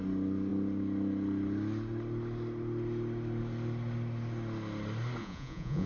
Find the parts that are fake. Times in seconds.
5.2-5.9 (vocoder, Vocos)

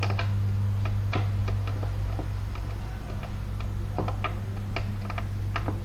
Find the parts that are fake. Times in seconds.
none